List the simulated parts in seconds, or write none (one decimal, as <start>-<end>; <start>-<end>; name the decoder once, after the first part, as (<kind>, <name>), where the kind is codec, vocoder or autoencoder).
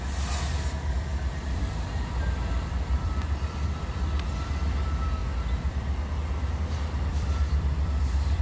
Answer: 1.1-4.5 (vocoder, BigVGAN v2); 7.1-8.4